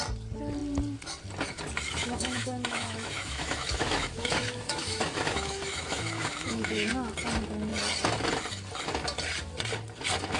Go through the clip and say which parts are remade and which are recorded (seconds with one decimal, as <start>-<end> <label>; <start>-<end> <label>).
0.0-2.0 recorded; 2.0-6.9 remade; 6.9-10.4 recorded